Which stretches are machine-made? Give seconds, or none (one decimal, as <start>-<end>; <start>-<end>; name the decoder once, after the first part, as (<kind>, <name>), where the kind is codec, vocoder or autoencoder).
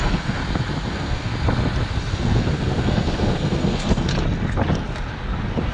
0.0-0.4 (codec, SNAC); 0.9-1.3; 2.1-4.1